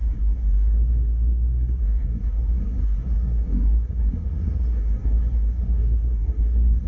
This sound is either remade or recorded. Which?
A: remade